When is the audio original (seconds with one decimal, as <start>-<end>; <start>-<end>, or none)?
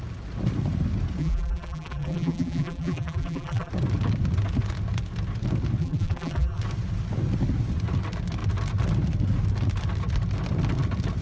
0.0-1.2; 3.7-5.8; 6.6-11.2